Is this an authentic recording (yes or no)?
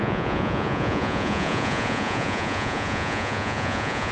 no